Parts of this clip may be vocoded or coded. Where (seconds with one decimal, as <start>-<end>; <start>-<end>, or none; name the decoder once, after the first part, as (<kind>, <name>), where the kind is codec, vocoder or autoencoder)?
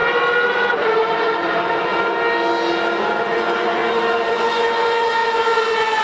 0.5-1.9 (vocoder, Vocos); 3.2-3.8; 4.3-6.0